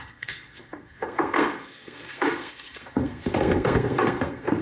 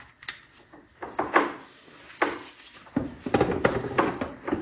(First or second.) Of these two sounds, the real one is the second